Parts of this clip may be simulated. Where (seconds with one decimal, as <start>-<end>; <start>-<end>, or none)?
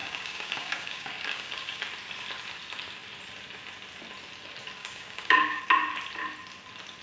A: 0.0-1.8; 4.8-5.6